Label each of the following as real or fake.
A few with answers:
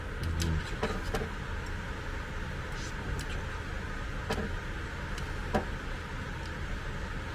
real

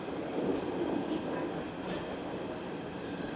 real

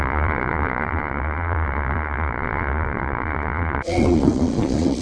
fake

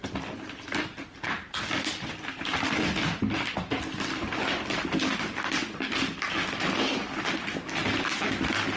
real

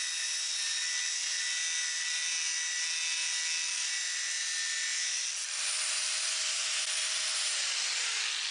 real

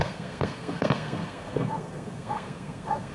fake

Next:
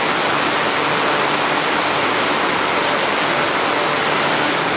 real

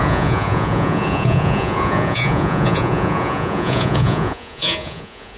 fake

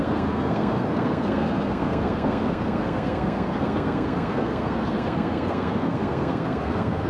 fake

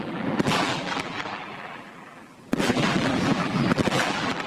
fake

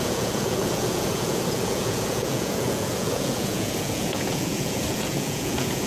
fake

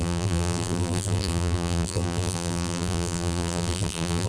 fake